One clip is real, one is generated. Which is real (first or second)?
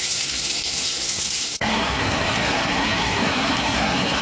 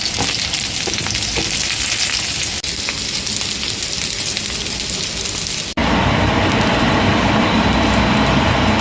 second